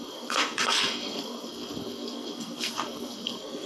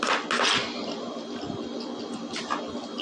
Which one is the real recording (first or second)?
second